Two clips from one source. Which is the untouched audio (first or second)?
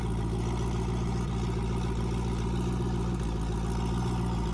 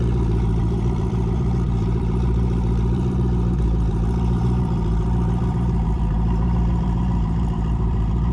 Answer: first